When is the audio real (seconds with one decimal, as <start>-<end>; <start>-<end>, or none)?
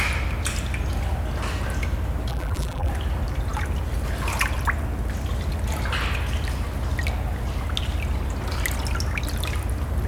0.0-2.3; 2.9-10.1